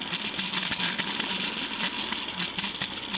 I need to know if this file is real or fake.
real